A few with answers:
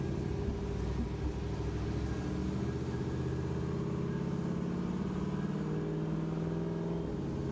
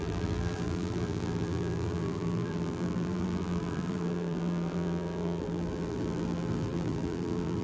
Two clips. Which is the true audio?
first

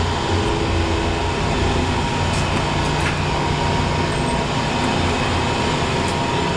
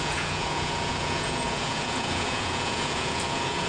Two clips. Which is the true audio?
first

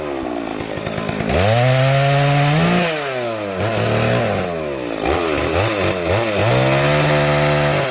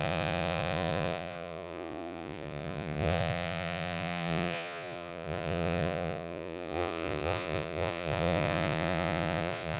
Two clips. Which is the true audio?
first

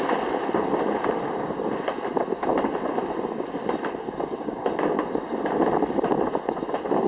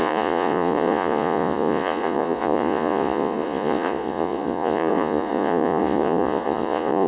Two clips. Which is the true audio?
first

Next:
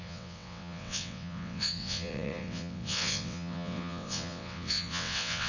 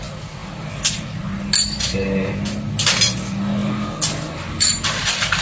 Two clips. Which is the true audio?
second